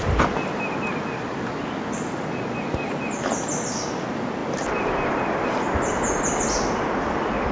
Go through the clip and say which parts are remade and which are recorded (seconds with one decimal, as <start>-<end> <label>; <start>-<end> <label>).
0.0-7.5 recorded